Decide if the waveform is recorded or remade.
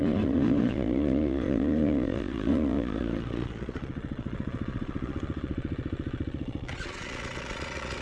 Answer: remade